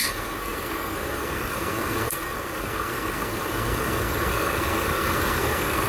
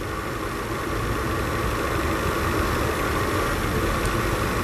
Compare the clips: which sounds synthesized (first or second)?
first